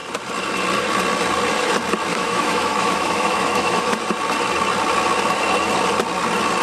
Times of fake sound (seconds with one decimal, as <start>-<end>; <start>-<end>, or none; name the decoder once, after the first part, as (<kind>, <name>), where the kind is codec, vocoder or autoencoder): 2.1-4.0 (autoencoder, DAC-VAE)